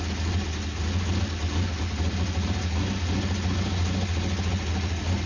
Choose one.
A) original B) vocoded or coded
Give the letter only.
A